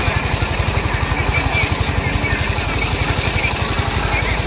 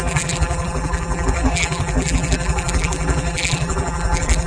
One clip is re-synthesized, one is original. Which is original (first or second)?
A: first